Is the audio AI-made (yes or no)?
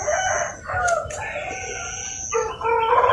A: no